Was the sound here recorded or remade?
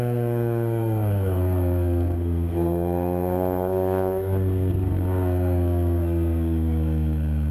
remade